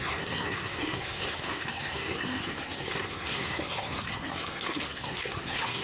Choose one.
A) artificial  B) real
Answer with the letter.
A